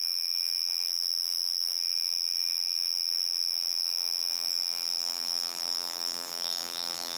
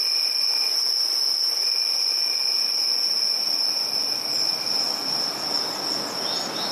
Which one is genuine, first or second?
second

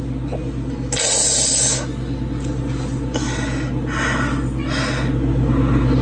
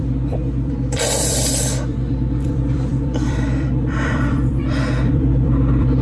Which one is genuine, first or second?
first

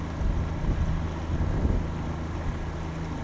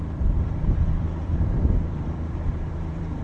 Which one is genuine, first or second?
first